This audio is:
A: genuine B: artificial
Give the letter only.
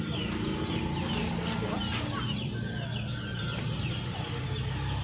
A